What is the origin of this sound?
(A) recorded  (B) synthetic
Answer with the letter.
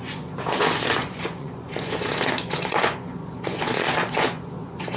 B